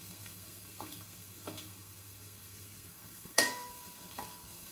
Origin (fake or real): fake